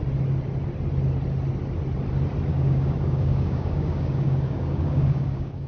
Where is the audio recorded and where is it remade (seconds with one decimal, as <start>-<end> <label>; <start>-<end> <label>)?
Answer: 0.0-2.5 recorded; 2.5-5.7 remade